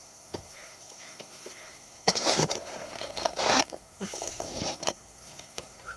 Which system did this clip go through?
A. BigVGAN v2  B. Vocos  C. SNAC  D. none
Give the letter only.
C